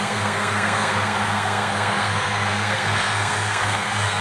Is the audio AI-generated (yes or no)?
yes